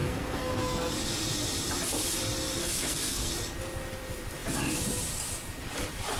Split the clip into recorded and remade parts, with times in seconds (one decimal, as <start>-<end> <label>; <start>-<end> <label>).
0.0-0.9 remade; 0.9-2.6 recorded; 2.6-3.3 remade; 3.3-6.2 recorded